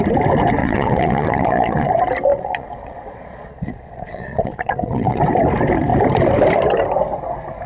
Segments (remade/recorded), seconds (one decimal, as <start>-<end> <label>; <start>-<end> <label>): 0.0-0.6 recorded; 0.6-1.9 remade; 1.9-2.3 recorded; 2.3-5.2 remade; 5.2-7.7 recorded